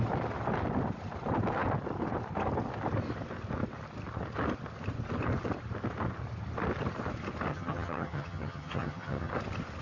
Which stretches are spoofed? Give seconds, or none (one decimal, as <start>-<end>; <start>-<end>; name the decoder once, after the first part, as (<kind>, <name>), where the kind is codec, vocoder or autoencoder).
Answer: 7.5-9.3 (vocoder, HiFi-GAN)